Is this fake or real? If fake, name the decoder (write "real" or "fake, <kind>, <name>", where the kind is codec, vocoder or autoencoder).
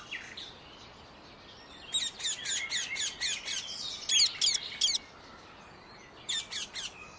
real